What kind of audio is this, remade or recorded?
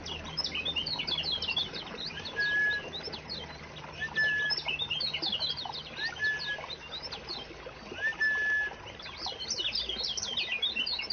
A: recorded